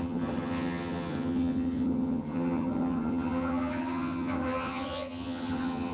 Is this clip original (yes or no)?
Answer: no